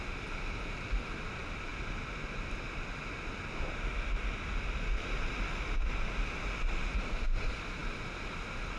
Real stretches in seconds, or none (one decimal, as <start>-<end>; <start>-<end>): 0.0-8.8